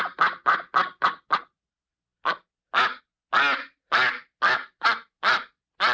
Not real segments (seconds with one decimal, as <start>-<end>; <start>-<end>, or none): none